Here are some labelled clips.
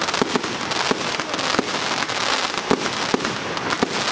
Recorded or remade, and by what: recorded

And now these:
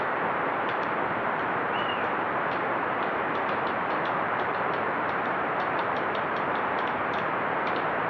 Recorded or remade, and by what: remade, vocoder, BigVGAN v2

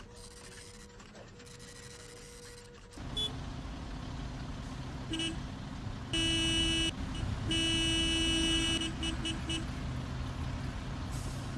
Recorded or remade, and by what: recorded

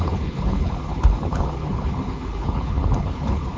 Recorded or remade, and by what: remade, codec, HILCodec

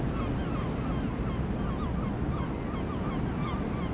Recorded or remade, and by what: recorded